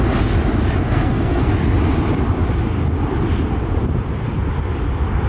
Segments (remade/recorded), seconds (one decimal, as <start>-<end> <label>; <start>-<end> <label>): 0.0-0.8 recorded; 0.8-1.5 remade; 1.5-5.3 recorded